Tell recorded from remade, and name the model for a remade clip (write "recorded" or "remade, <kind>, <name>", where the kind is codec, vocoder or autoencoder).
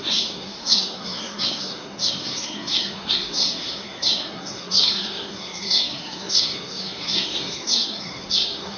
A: remade, codec, SNAC